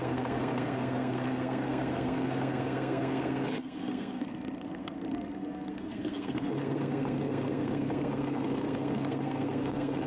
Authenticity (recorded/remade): remade